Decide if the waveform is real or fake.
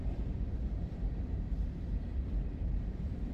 fake